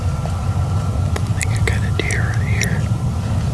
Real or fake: real